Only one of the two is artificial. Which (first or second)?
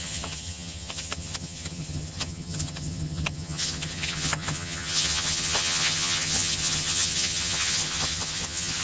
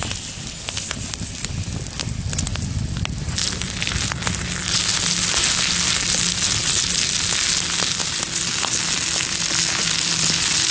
first